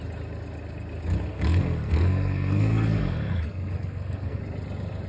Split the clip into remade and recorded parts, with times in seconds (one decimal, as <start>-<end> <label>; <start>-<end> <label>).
0.0-1.3 recorded; 1.3-4.4 remade; 4.4-5.1 recorded